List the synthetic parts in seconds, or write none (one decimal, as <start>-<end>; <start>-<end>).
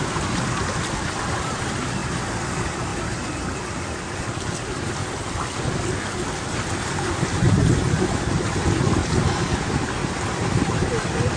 none